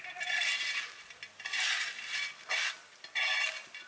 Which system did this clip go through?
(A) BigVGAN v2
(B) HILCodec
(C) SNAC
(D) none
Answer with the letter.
D